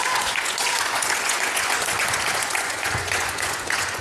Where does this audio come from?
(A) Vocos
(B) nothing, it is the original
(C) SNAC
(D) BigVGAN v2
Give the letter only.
A